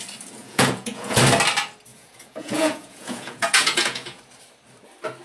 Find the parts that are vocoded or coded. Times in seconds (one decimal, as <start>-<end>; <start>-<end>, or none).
0.4-1.2; 1.9-4.2